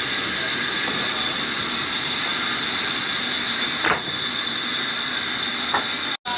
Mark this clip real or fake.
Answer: real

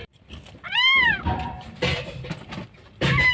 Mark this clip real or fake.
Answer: fake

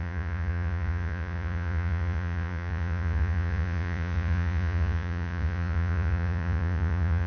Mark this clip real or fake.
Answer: fake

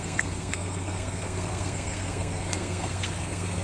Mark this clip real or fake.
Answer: fake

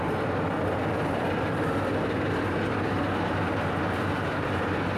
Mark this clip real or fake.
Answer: real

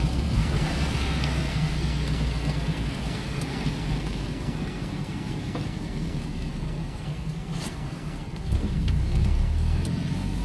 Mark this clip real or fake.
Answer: fake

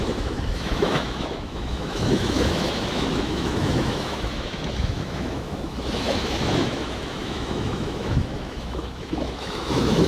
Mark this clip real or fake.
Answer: fake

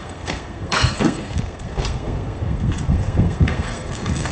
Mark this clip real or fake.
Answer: fake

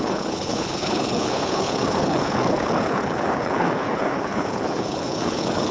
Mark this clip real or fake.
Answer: fake